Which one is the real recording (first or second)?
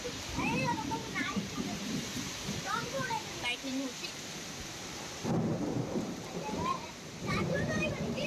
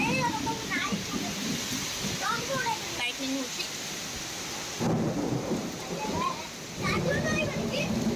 second